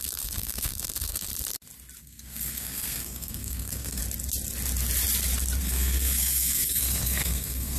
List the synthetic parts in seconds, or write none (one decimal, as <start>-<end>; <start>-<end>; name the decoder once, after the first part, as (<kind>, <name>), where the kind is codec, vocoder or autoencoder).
0.0-1.3 (codec, SNAC); 2.0-4.0; 5.6-7.8